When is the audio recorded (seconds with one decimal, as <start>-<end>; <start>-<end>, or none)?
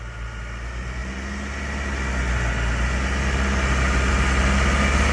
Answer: 0.0-5.1